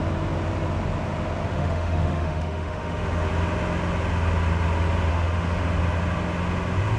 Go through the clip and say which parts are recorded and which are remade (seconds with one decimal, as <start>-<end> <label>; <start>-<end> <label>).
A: 0.0-1.5 recorded; 1.5-3.3 remade; 3.3-5.1 recorded; 5.1-5.6 remade; 5.6-7.0 recorded